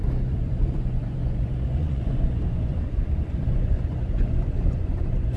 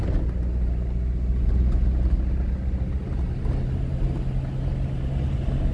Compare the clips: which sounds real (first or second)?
second